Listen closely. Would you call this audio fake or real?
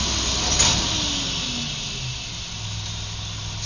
real